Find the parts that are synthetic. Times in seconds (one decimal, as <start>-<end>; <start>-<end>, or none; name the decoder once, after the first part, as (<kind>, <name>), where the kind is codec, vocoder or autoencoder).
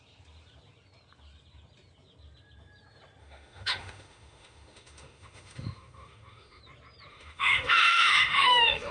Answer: 3.2-6.6 (autoencoder, DAC-VAE); 7.1-8.9